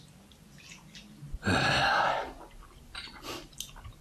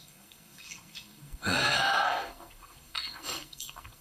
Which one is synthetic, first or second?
second